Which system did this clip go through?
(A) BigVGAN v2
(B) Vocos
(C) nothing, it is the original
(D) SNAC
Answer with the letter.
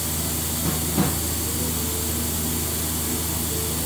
C